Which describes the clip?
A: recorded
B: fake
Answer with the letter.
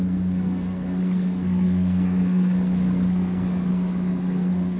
B